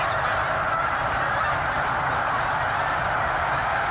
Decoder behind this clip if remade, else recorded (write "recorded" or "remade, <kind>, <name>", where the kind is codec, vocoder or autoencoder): recorded